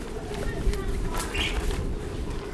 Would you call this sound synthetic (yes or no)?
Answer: no